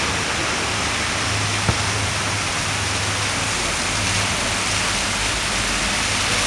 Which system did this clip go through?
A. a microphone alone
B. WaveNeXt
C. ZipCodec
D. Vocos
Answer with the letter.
A